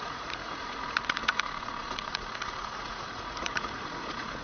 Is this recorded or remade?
remade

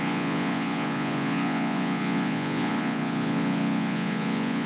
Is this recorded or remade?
remade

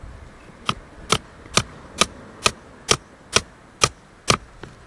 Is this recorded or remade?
recorded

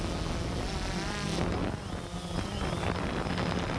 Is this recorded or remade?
recorded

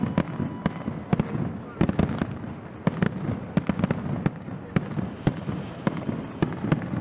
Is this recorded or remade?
recorded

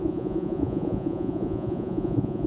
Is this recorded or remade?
remade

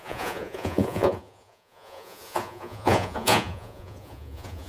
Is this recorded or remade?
remade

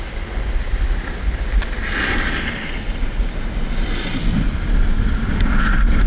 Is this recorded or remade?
recorded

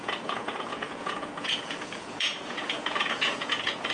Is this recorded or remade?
remade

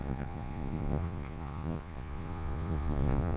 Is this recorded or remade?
remade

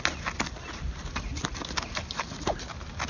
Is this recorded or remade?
recorded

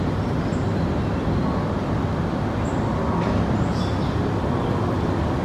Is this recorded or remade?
recorded